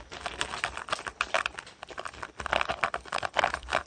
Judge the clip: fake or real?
real